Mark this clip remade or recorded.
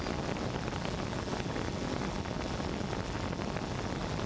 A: recorded